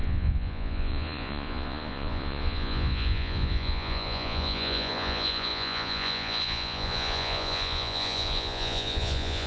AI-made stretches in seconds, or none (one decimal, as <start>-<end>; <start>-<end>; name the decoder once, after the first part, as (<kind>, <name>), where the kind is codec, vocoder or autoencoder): 0.0-9.5 (vocoder, Vocos)

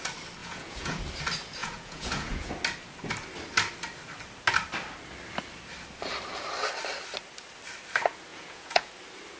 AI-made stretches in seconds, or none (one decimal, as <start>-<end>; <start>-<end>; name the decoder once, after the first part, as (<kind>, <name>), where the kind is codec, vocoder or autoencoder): 0.4-1.0 (vocoder, Vocos); 1.6-2.5; 8.3-8.9

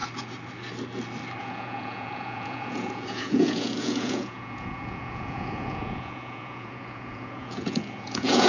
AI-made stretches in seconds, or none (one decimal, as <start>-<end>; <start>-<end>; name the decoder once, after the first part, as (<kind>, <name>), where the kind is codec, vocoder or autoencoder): 1.4-8.5 (vocoder, Vocos)

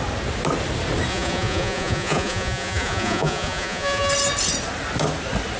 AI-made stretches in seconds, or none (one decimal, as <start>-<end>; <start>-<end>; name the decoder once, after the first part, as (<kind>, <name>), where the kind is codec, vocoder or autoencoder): 1.1-4.1 (vocoder, Vocos)

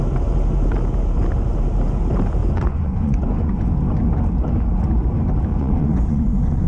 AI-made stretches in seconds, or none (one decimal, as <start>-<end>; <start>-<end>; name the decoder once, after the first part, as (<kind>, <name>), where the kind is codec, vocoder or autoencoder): 2.4-3.7 (vocoder, Vocos); 5.5-6.7